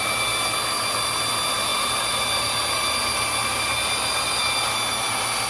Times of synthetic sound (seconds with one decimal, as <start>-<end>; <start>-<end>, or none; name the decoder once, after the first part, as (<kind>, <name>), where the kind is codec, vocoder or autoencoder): none

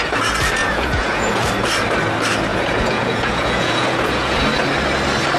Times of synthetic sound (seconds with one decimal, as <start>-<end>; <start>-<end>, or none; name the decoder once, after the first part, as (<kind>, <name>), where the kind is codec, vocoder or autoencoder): 0.6-1.5 (vocoder, Vocos); 2.5-4.4

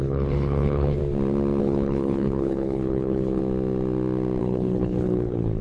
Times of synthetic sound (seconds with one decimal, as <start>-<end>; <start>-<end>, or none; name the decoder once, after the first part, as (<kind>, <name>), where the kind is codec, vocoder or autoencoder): 0.0-1.0 (codec, HILCodec); 1.6-3.4; 4.4-5.6

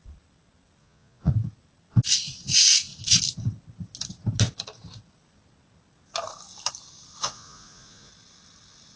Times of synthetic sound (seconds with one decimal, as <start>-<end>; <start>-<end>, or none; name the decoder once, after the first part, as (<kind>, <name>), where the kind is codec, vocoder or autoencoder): 0.8-1.3 (vocoder, Vocos); 7.2-8.1

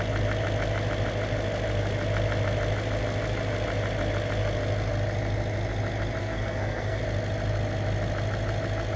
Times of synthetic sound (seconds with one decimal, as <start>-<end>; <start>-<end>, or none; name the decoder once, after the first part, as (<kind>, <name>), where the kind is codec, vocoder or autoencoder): 6.2-7.0 (codec, SNAC)

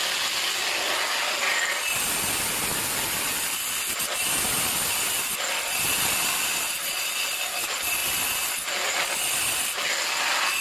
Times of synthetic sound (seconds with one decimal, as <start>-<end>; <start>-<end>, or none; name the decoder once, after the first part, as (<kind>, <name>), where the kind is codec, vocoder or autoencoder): none